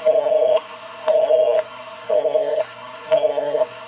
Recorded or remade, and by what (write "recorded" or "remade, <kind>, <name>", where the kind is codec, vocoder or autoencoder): remade, codec, SNAC